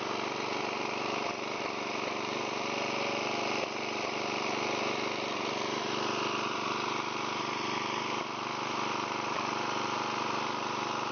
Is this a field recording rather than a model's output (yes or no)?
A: no